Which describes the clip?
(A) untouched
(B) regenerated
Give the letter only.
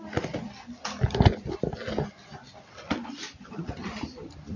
A